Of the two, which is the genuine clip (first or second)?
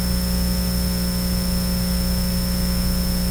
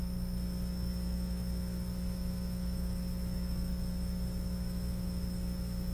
first